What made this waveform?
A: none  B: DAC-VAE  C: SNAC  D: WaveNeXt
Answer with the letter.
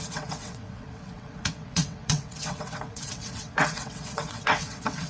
D